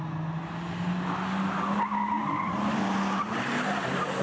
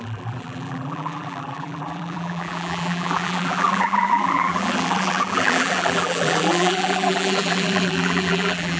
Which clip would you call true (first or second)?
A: first